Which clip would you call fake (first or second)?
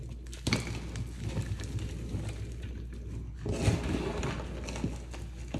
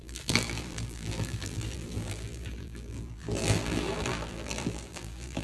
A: second